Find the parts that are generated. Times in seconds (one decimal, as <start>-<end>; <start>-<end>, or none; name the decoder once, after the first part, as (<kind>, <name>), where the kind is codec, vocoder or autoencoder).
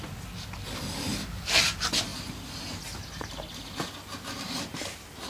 1.1-1.6 (vocoder, BigVGAN v2)